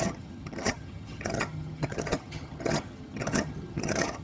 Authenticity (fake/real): fake